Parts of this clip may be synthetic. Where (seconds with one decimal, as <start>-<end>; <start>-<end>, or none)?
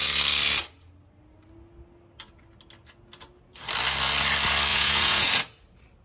4.7-5.3